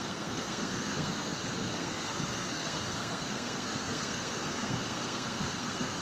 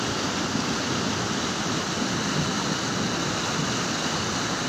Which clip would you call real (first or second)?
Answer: second